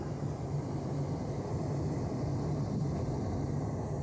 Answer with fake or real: real